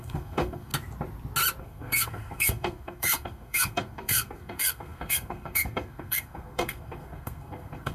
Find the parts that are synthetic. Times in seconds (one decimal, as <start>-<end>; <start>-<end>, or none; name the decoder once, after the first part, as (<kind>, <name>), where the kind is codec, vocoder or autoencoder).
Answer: 0.0-0.7 (codec, SNAC); 1.6-7.9